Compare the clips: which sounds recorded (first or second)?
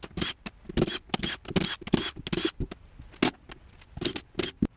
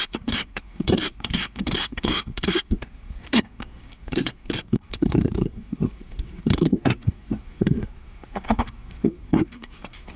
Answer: first